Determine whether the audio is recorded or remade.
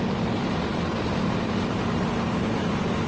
recorded